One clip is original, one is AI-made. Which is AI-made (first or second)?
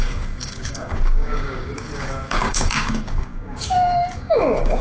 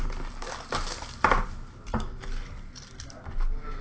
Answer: first